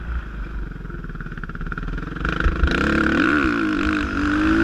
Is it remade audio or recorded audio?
recorded